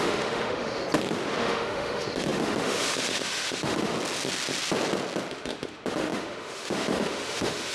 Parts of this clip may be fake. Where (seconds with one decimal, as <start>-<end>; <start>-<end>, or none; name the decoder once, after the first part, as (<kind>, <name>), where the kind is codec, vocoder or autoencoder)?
0.0-0.8 (autoencoder, DAC-VAE); 1.4-3.9; 5.3-7.7